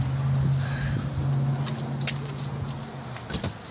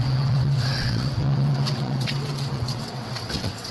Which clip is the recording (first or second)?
first